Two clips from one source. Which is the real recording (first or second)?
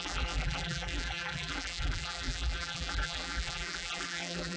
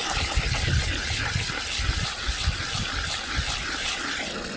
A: second